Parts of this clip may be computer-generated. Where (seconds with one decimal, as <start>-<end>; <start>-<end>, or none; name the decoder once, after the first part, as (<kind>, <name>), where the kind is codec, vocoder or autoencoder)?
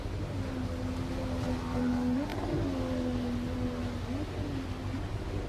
none